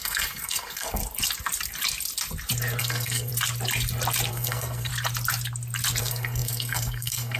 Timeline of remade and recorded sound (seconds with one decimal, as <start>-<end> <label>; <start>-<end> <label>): 0.0-1.0 remade; 1.0-2.8 recorded; 2.8-3.3 remade; 3.3-4.3 recorded; 4.3-4.9 remade; 4.9-6.0 recorded; 6.0-7.4 remade